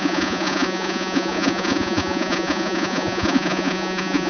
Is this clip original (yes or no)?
no